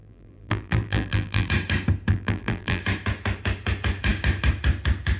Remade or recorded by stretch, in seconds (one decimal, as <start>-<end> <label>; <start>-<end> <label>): 0.0-1.5 remade; 1.5-2.1 recorded; 2.1-2.8 remade; 2.8-5.2 recorded